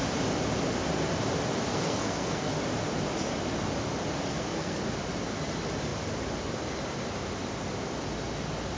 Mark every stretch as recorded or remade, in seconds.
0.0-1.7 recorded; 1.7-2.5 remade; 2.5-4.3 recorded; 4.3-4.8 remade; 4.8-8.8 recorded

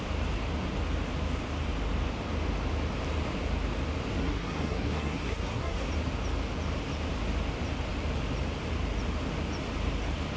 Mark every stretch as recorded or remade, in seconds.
0.0-4.1 recorded; 4.1-5.9 remade; 5.9-10.4 recorded

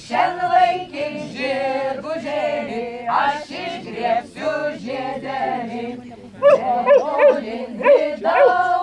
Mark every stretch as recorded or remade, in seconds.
0.0-8.8 recorded

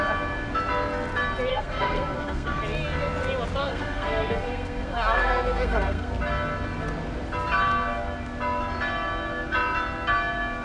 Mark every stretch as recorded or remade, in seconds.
0.0-1.5 recorded; 1.5-2.6 remade; 2.6-3.6 recorded; 3.6-6.1 remade; 6.1-10.6 recorded

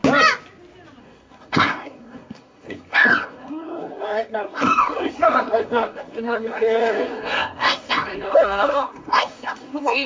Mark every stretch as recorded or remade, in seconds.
0.0-1.0 recorded; 1.0-10.1 remade

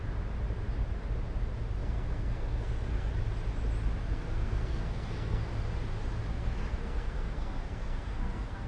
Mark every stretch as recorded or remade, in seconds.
0.0-1.8 recorded; 1.8-3.1 remade; 3.1-4.0 recorded; 4.0-5.5 remade; 5.5-6.3 recorded; 6.3-8.7 remade